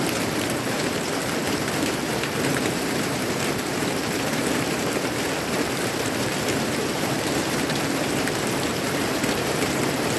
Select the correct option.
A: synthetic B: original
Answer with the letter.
A